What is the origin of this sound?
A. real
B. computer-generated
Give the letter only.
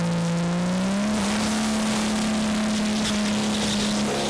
A